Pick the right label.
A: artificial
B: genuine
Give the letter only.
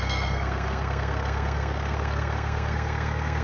A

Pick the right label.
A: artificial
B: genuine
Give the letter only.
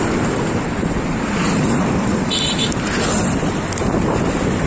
B